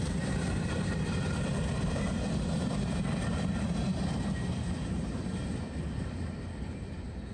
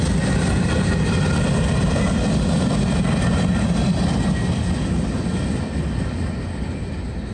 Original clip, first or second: second